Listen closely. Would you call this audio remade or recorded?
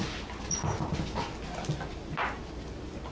recorded